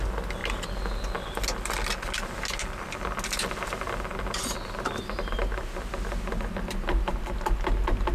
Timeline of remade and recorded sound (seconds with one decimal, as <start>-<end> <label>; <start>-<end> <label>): 0.0-8.1 recorded